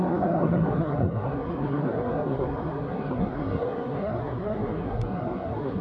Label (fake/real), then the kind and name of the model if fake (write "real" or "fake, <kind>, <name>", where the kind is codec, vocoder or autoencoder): fake, codec, SNAC